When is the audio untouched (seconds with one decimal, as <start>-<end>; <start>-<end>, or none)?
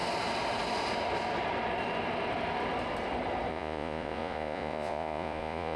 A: 0.0-3.5